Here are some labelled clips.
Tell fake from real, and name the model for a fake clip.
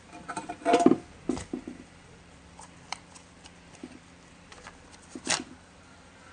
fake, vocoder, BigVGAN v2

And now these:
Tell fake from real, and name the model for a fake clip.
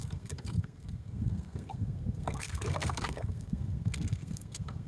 fake, codec, SNAC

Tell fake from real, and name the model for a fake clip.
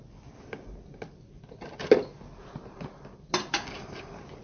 real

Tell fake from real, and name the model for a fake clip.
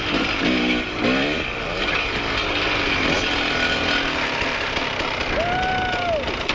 real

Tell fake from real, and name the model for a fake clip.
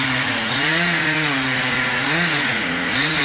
fake, vocoder, Vocos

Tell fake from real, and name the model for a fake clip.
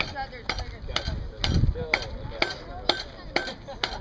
real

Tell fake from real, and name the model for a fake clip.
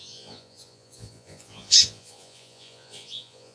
fake, vocoder, Vocos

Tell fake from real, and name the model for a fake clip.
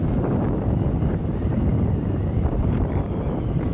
real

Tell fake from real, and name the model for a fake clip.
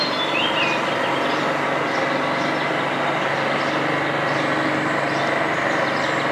real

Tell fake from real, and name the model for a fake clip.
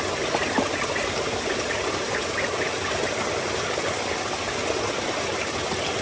real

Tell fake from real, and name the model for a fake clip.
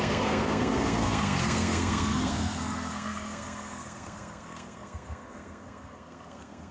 fake, codec, SNAC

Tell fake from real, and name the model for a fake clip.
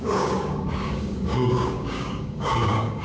fake, codec, DAC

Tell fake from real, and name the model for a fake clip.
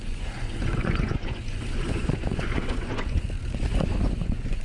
fake, vocoder, Vocos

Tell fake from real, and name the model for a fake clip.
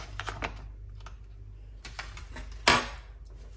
real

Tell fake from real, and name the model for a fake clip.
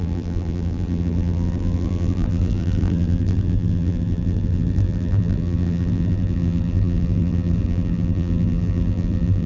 fake, vocoder, BigVGAN v2